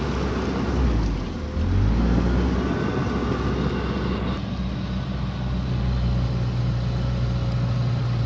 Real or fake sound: real